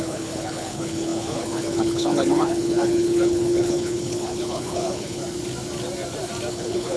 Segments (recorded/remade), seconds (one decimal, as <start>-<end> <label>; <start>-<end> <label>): 0.0-5.2 remade; 5.2-6.5 recorded; 6.5-7.0 remade